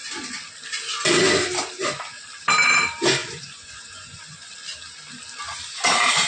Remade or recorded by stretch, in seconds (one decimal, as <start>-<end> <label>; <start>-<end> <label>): 0.0-3.2 recorded; 3.2-4.5 remade; 4.5-6.3 recorded

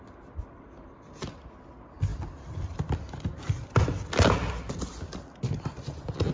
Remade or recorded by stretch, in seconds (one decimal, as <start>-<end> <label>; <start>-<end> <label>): 0.0-6.3 recorded